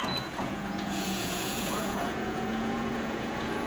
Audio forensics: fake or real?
fake